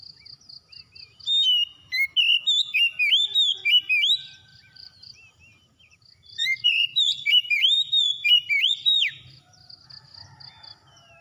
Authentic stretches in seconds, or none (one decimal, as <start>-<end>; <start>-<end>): 0.0-4.5; 9.7-11.2